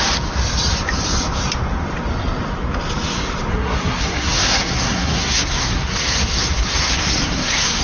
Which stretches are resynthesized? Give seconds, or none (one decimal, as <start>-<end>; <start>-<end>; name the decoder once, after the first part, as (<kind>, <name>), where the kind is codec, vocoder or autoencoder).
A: 3.5-7.8 (codec, SNAC)

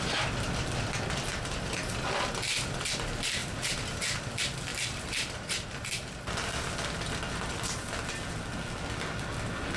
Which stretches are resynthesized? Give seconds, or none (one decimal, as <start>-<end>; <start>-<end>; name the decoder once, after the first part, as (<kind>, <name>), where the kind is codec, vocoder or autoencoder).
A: 1.3-1.9 (vocoder, BigVGAN v2); 3.4-4.3; 4.7-6.1

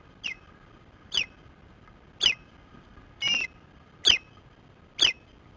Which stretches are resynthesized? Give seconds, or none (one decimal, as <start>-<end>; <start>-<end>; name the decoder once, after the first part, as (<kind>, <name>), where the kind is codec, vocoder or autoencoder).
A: none

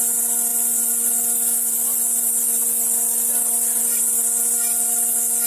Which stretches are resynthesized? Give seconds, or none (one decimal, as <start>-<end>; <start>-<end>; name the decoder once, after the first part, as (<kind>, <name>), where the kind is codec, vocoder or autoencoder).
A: none

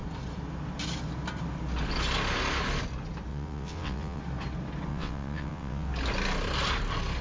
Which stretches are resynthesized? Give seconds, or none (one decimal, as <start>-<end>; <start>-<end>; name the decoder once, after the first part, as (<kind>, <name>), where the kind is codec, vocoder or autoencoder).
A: 3.3-4.2 (vocoder, WaveNeXt); 4.9-5.9

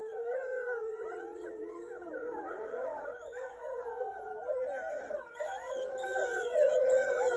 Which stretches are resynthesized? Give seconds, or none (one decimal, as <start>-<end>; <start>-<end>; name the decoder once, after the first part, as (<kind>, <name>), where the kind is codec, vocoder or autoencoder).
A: 0.0-4.3 (vocoder, WaveNeXt); 4.9-7.4

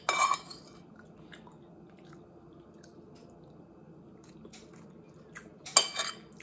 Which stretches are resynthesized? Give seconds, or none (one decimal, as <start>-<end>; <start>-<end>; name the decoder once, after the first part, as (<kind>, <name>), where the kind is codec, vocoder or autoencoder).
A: none

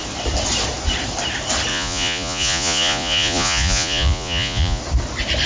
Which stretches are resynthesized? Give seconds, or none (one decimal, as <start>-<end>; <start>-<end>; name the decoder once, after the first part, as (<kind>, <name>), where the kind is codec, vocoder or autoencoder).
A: 1.7-4.8 (vocoder, Vocos)